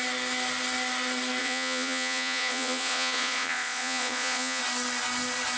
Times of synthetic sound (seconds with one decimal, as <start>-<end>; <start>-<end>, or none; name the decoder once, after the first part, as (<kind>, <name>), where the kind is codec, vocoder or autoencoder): 1.4-4.6 (vocoder, Vocos)